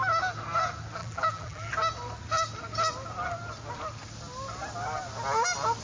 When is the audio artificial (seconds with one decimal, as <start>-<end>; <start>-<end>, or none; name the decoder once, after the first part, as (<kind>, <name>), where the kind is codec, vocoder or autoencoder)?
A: 1.0-1.7 (vocoder, BigVGAN v2)